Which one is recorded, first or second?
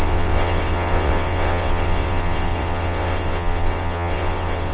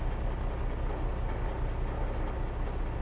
second